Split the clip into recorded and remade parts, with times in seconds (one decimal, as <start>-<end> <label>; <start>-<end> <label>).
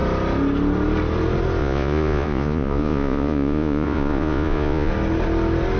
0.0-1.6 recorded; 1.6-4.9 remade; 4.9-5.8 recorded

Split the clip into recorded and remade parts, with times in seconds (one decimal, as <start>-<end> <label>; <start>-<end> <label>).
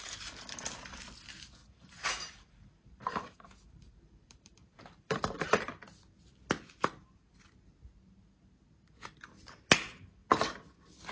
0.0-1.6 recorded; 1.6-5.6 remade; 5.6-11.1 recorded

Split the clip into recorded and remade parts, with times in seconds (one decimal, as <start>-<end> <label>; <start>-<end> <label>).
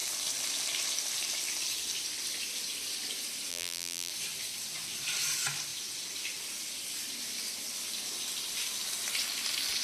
0.0-3.5 recorded; 3.5-4.1 remade; 4.1-9.8 recorded